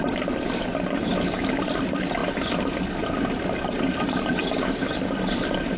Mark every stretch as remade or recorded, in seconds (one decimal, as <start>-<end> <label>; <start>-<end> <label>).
0.0-5.8 recorded